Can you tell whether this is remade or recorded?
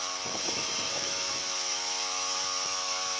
remade